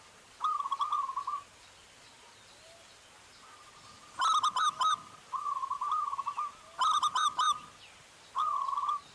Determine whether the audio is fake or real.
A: real